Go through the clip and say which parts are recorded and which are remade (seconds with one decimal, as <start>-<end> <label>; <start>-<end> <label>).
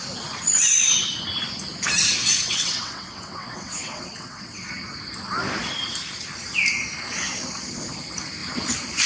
0.0-2.2 recorded; 2.2-4.7 remade; 4.7-9.1 recorded